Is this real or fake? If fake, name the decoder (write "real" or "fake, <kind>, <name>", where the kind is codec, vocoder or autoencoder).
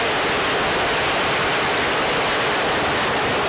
real